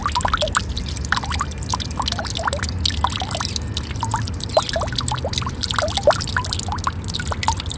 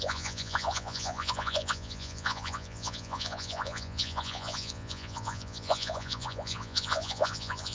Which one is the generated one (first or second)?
second